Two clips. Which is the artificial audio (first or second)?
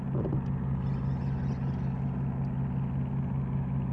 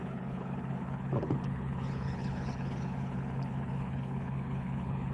second